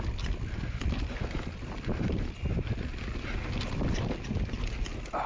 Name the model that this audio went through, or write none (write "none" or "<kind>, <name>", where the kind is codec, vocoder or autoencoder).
none